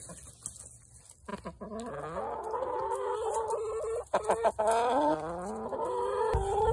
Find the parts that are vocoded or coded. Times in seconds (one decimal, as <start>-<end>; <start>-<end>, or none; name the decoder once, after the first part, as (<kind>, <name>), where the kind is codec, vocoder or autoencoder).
none